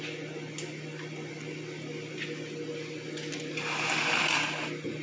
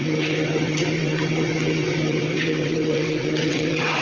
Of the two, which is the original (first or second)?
first